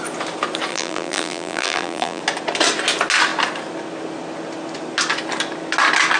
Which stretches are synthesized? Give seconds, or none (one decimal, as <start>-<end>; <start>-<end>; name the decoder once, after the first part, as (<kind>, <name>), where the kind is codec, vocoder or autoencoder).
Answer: 0.7-2.2 (vocoder, BigVGAN v2)